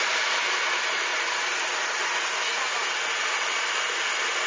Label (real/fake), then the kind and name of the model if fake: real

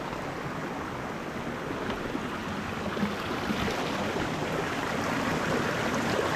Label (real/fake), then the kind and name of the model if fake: real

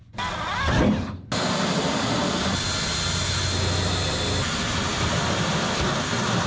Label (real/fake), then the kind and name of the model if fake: real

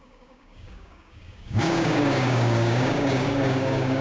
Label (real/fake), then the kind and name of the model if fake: fake, codec, DAC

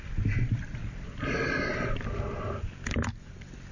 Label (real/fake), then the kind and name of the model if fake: real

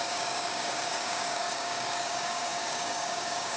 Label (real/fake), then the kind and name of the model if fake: fake, codec, DAC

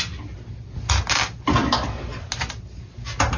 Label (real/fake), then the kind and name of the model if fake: real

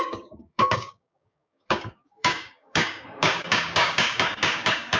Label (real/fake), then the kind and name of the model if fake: fake, codec, DAC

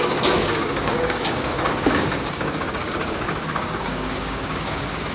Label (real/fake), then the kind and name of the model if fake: fake, codec, DAC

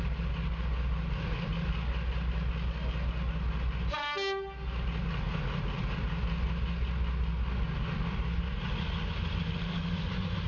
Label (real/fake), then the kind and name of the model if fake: real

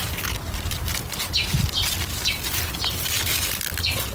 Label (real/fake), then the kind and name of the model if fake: real